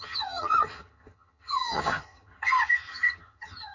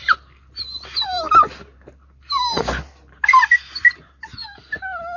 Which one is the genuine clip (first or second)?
second